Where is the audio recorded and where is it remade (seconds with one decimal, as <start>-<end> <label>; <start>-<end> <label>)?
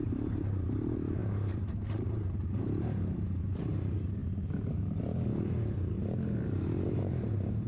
0.0-4.2 remade; 4.2-7.0 recorded; 7.0-7.7 remade